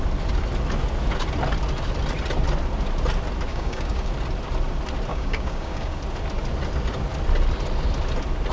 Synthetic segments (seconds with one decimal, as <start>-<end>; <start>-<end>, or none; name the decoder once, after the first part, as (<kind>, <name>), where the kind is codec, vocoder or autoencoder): 3.5-4.1 (codec, DAC); 5.1-6.0